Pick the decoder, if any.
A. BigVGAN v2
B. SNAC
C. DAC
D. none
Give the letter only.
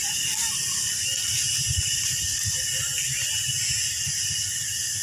D